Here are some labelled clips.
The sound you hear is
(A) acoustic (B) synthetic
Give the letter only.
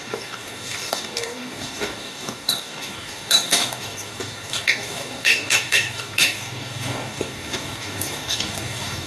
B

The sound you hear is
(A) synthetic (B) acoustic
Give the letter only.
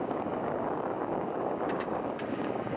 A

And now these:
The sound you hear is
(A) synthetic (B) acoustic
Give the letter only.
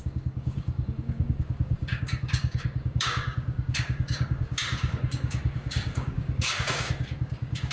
A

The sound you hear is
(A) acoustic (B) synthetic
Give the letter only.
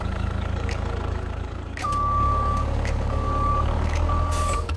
B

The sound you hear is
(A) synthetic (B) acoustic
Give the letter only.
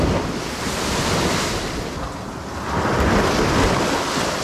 B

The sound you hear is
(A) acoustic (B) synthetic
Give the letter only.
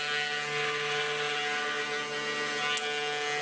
A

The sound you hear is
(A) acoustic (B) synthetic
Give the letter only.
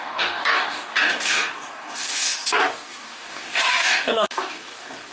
B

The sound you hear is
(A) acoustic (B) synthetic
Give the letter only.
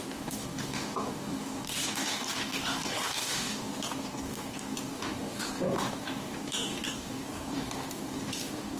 B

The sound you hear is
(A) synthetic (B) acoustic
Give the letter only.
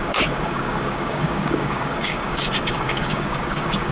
A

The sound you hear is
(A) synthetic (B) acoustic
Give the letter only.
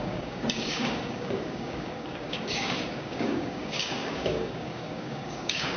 A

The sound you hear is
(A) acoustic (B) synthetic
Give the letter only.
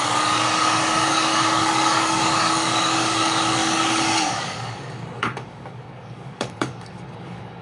B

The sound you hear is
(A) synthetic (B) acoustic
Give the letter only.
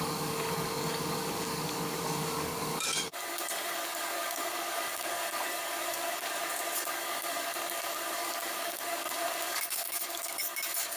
A